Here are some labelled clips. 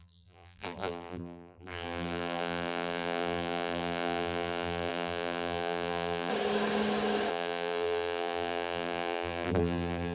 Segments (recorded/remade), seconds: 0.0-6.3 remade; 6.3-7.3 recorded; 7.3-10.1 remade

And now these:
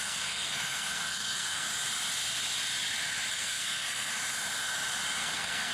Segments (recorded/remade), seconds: 0.0-1.7 remade; 1.7-3.3 recorded; 3.3-4.1 remade; 4.1-5.2 recorded; 5.2-5.7 remade

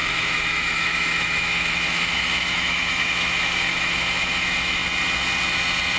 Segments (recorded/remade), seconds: 0.0-4.8 remade; 4.8-6.0 recorded

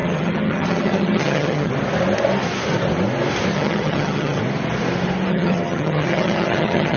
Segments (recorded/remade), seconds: 0.0-1.7 remade; 1.7-3.5 recorded; 3.5-4.4 remade; 4.4-5.3 recorded; 5.3-7.0 remade

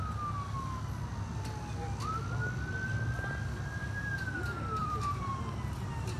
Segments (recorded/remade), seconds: 0.0-4.8 recorded; 4.8-5.4 remade; 5.4-6.2 recorded

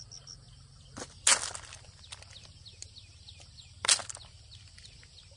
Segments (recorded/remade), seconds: 0.0-5.4 recorded